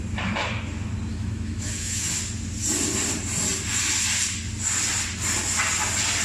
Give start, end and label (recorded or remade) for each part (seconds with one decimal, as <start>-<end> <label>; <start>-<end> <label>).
0.0-1.1 recorded; 1.1-2.1 remade; 2.1-6.2 recorded